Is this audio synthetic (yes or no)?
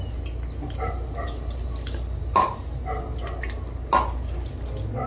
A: no